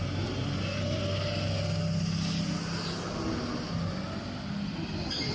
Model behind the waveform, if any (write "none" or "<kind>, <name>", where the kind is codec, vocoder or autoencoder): none